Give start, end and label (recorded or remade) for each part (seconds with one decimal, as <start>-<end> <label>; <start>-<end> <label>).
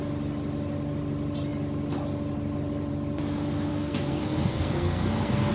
0.0-3.7 recorded; 3.7-5.5 remade